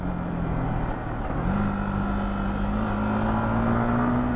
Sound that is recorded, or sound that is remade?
recorded